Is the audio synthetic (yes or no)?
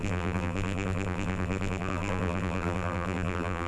yes